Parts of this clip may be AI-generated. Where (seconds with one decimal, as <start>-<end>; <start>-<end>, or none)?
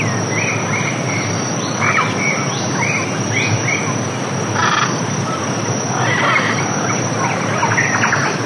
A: 4.6-5.4